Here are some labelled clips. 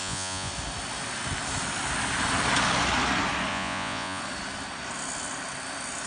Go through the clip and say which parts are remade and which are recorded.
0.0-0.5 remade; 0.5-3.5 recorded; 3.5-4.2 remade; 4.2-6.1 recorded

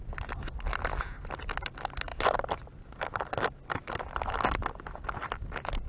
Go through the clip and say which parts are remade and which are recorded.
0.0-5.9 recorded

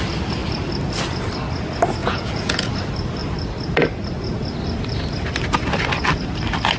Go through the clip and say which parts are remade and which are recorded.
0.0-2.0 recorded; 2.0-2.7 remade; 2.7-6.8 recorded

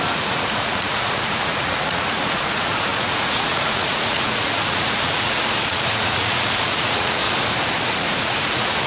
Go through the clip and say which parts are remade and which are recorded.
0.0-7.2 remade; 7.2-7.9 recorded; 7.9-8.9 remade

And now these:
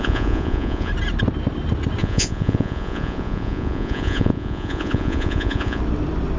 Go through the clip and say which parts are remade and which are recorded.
0.0-0.9 remade; 0.9-2.0 recorded; 2.0-5.8 remade; 5.8-6.4 recorded